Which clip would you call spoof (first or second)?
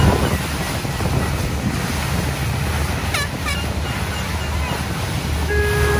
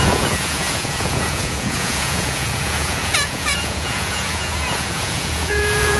second